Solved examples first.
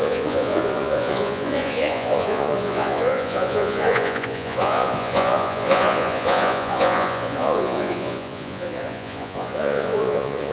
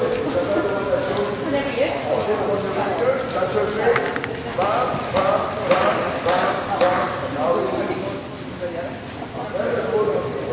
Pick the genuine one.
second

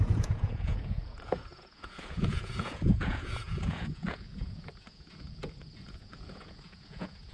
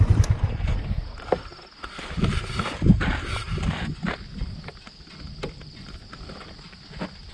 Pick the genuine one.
second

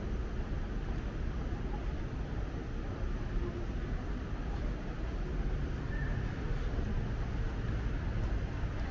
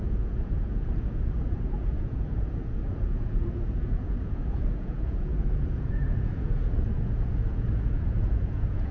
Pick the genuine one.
first